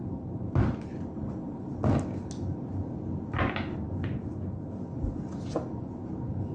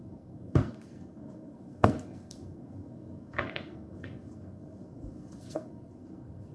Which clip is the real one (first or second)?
first